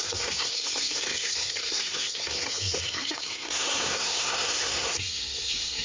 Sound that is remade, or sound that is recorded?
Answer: remade